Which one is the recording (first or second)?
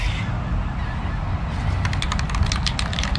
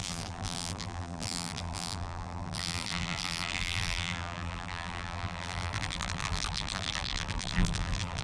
first